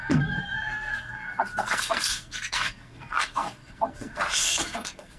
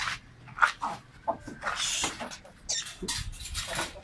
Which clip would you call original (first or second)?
second